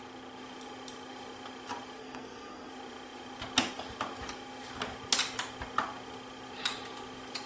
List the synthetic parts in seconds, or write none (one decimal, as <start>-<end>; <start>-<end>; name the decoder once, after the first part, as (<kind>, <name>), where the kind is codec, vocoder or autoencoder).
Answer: 2.0-2.7 (codec, SNAC)